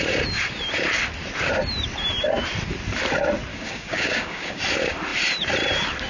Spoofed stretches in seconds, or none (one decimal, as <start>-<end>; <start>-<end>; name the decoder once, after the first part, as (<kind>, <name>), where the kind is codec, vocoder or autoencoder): 3.5-4.6 (codec, DAC)